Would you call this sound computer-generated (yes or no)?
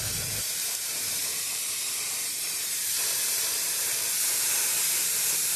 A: yes